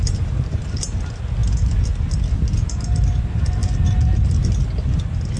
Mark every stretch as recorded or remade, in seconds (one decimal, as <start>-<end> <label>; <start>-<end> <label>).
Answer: 0.0-0.6 remade; 0.6-5.4 recorded